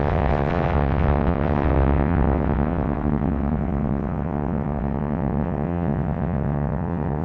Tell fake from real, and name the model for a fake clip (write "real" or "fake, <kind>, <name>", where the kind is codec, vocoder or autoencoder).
fake, vocoder, WaveNeXt